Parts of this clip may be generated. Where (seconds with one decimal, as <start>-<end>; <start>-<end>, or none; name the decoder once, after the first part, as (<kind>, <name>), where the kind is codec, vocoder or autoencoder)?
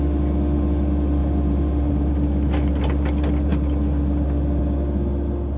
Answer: 1.2-2.1 (vocoder, BigVGAN v2)